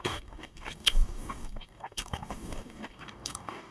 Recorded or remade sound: remade